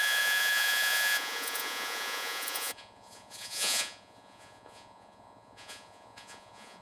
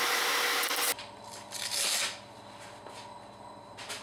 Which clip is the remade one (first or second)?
first